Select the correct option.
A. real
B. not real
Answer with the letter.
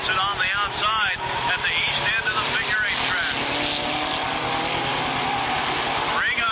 A